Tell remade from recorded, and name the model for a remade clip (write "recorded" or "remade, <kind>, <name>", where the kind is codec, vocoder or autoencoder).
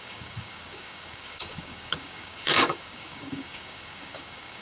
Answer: remade, codec, DAC